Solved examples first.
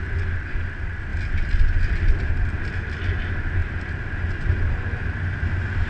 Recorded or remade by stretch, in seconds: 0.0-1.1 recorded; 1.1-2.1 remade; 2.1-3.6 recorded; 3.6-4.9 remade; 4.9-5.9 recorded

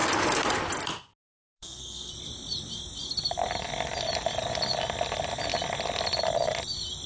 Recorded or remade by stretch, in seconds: 0.0-1.3 recorded; 1.3-2.1 remade; 2.1-7.1 recorded

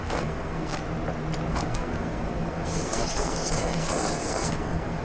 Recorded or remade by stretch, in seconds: 0.0-0.8 remade; 0.8-1.5 recorded; 1.5-5.0 remade

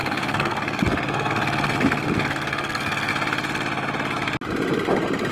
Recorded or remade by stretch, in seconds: 0.0-3.1 remade; 3.1-5.3 recorded